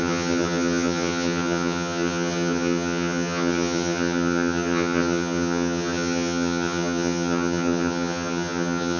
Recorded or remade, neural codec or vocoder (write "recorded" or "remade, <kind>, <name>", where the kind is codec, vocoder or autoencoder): remade, vocoder, HiFi-GAN